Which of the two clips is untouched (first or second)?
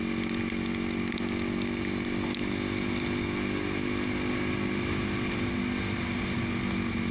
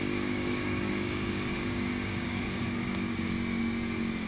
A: first